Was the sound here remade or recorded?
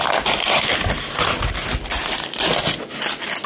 recorded